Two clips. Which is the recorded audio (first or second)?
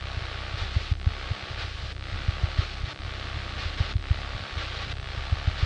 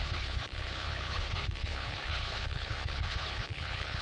first